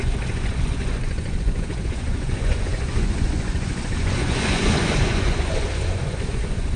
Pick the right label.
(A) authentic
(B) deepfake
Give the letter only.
B